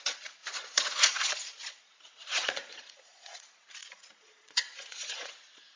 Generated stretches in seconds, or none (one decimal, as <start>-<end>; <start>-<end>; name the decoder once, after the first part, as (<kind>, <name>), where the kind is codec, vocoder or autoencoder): 0.0-5.8 (vocoder, Vocos)